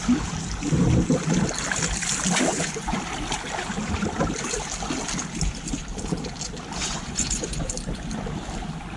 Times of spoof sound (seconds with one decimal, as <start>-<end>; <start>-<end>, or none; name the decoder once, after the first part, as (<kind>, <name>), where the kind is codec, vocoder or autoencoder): 2.5-3.0 (vocoder, Vocos); 6.8-7.7